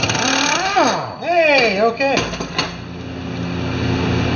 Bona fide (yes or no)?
yes